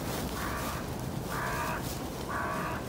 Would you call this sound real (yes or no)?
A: yes